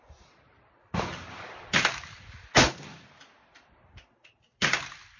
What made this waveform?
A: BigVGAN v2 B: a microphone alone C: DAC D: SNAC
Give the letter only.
B